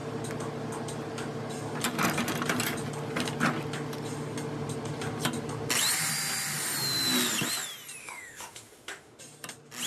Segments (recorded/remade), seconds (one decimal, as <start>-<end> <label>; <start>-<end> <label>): 0.0-8.0 recorded; 8.0-9.2 remade; 9.2-9.9 recorded